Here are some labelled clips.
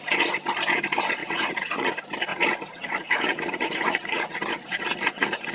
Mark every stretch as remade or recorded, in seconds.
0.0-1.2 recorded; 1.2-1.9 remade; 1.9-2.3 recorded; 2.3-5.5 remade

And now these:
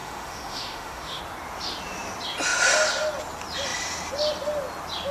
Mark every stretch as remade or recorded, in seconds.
0.0-1.2 remade; 1.2-5.1 recorded

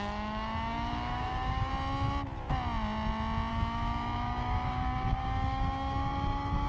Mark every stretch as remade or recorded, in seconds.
0.0-1.7 remade; 1.7-3.5 recorded; 3.5-6.7 remade

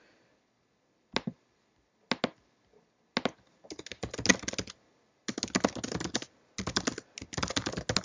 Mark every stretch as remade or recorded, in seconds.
0.0-8.0 recorded

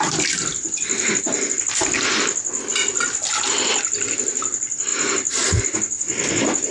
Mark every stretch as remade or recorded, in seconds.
0.0-2.7 recorded; 2.7-3.7 remade; 3.7-6.7 recorded

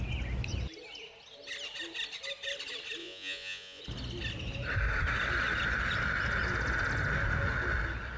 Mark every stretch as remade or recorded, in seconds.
0.0-3.0 recorded; 3.0-3.8 remade; 3.8-8.2 recorded